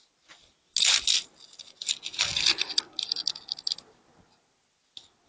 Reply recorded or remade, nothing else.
recorded